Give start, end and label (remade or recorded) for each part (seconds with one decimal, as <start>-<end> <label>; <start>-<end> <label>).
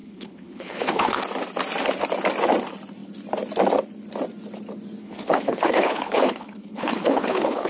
0.0-1.2 remade; 1.2-5.0 recorded; 5.0-7.7 remade